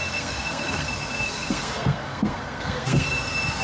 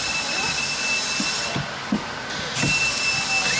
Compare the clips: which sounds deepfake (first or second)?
first